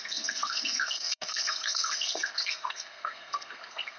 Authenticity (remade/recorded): remade